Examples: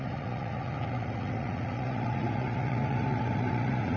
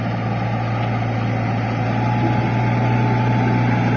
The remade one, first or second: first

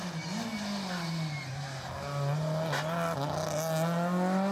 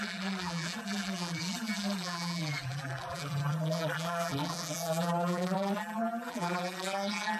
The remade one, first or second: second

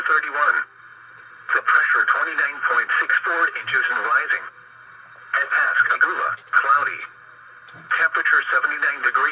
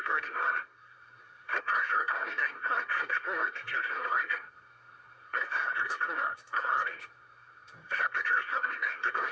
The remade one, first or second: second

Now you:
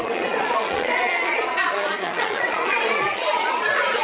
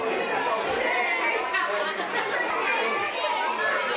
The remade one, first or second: first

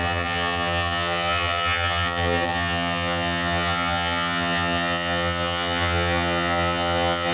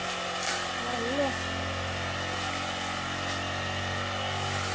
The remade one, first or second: first